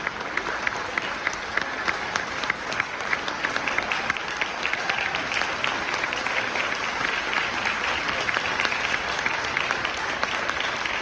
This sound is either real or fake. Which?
fake